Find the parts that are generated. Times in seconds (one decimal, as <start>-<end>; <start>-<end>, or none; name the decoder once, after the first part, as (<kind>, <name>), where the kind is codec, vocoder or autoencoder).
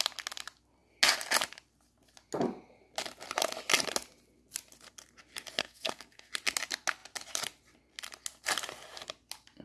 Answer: 5.6-6.3 (codec, SNAC)